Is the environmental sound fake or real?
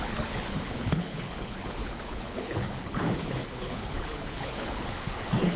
fake